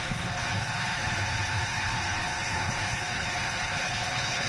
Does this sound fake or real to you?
fake